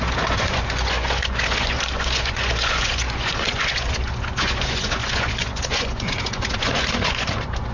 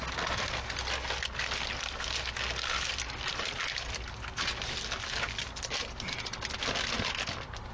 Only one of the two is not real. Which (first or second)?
first